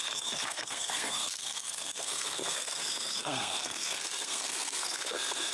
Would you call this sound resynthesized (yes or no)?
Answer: yes